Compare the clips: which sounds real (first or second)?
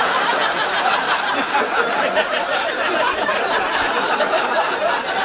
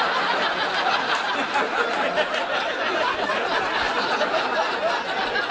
second